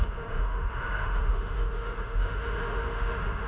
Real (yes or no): no